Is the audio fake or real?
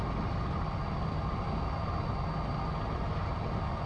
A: real